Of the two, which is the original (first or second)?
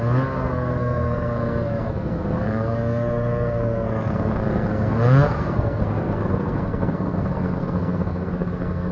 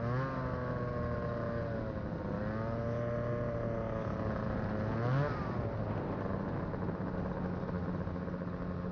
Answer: second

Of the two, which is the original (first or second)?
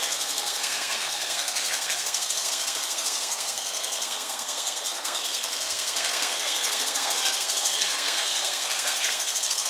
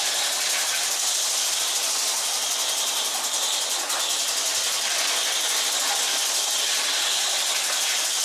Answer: second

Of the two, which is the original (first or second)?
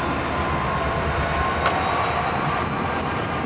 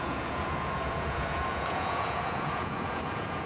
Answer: first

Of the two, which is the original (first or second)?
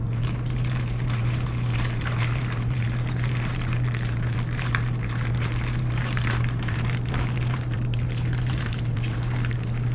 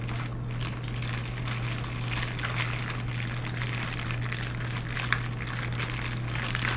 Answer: second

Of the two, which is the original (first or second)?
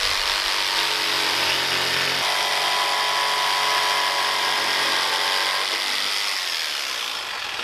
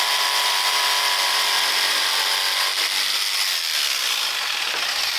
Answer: first